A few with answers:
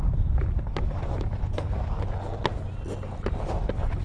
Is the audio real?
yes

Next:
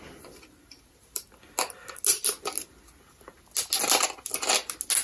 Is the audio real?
yes